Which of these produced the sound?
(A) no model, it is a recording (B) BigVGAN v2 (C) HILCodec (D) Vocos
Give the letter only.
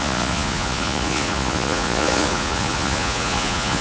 D